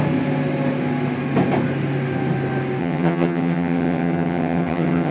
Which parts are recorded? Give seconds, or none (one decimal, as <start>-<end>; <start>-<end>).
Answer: 0.0-2.8